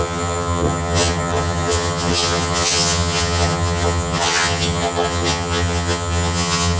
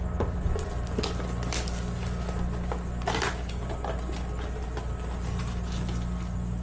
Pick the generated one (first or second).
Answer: first